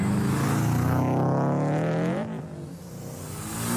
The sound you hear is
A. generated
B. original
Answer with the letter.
B